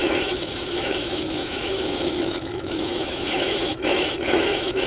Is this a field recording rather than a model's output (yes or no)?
no